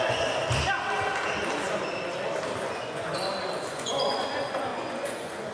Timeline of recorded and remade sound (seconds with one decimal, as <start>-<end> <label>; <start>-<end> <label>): 0.0-0.4 remade; 0.4-2.6 recorded; 2.6-3.2 remade; 3.2-3.7 recorded; 3.7-5.5 remade